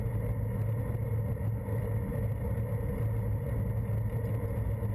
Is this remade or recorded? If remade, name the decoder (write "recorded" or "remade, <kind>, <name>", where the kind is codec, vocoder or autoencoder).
recorded